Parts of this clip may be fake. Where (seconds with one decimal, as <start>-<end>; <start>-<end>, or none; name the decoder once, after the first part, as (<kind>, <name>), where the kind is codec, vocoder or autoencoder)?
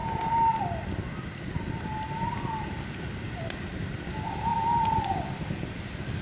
none